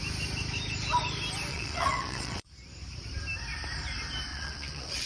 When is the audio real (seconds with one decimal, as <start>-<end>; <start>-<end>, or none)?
0.0-1.5; 2.5-4.3